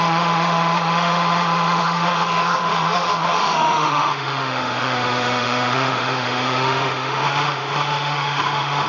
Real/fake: fake